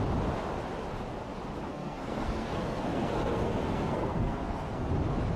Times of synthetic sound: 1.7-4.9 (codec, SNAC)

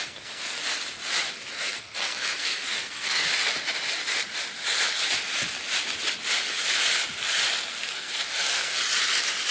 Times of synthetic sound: 0.0-0.6 (codec, SNAC); 1.3-3.3; 7.7-8.8

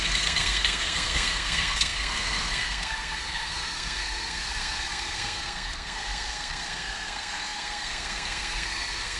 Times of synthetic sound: 0.0-9.2 (codec, SNAC)

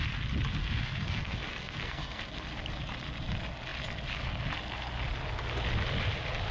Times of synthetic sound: 0.6-2.2 (codec, SNAC)

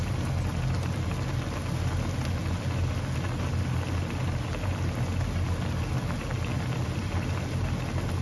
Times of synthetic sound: none

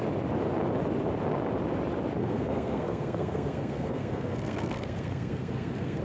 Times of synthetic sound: 2.2-6.0 (codec, SNAC)